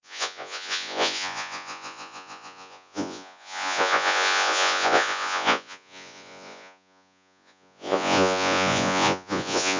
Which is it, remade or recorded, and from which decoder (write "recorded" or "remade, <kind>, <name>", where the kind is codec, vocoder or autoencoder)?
remade, vocoder, Vocos